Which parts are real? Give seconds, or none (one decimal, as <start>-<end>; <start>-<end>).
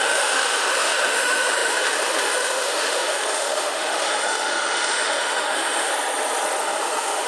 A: 5.9-6.6